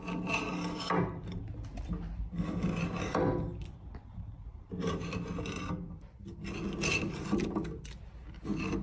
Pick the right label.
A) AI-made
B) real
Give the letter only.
B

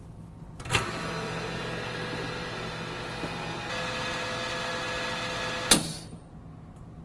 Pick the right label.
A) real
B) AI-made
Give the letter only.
A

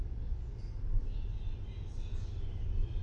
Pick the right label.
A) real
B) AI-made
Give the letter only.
A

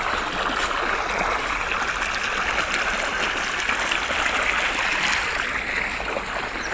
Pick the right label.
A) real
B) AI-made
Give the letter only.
A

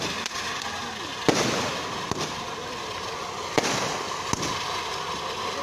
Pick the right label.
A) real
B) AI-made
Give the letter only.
A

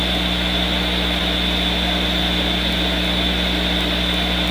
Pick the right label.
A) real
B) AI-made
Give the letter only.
A